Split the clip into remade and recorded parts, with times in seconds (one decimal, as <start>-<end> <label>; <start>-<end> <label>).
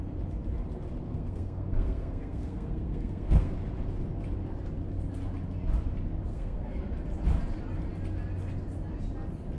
0.0-1.1 recorded; 1.1-3.5 remade; 3.5-6.3 recorded; 6.3-6.8 remade; 6.8-9.6 recorded